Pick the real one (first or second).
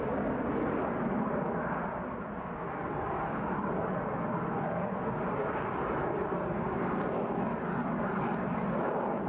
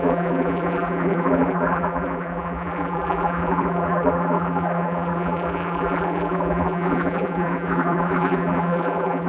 first